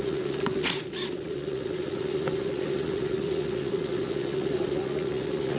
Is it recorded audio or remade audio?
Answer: remade